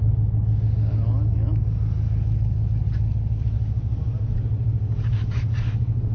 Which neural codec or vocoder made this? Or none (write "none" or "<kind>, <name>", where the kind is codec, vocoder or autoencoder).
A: none